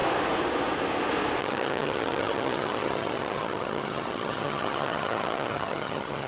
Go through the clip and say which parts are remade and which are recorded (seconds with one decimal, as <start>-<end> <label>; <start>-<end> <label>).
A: 0.0-1.4 recorded; 1.4-6.3 remade

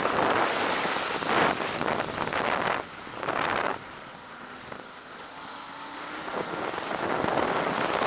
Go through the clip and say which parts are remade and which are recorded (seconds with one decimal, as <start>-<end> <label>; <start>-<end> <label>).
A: 0.0-8.1 recorded

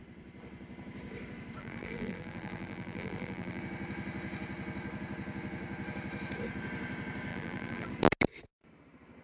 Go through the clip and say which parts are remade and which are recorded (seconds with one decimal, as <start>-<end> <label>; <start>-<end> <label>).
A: 0.0-1.6 recorded; 1.6-3.6 remade; 3.6-7.3 recorded; 7.3-7.9 remade; 7.9-9.2 recorded

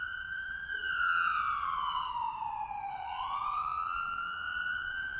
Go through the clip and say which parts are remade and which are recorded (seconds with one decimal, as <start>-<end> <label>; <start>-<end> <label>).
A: 0.0-2.1 remade; 2.1-2.9 recorded; 2.9-5.2 remade

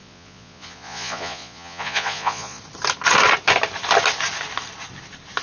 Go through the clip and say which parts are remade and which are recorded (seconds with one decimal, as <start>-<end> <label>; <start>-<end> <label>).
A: 0.0-2.6 remade; 2.6-5.4 recorded

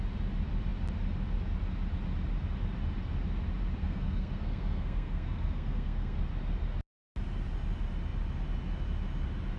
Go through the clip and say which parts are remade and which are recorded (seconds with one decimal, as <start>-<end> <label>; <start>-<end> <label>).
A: 0.0-3.8 recorded; 3.8-6.2 remade; 6.2-9.6 recorded

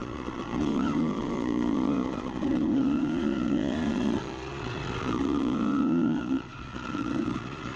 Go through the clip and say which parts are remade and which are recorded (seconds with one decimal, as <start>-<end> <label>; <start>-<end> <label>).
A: 0.0-7.8 remade

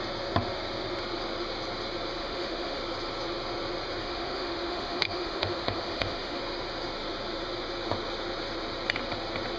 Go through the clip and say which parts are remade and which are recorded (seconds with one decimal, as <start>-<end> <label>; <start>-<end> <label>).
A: 0.0-2.2 recorded; 2.2-2.8 remade; 2.8-4.0 recorded; 4.0-6.4 remade; 6.4-9.6 recorded